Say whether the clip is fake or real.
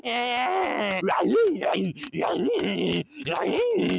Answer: real